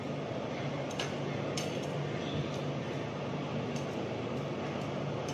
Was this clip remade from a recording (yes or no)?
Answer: no